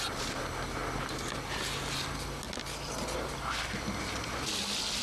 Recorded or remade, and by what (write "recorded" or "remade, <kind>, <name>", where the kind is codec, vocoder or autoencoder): recorded